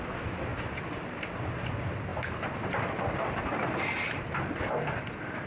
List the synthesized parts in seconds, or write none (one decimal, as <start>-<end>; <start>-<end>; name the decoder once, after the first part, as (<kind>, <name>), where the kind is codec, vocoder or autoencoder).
none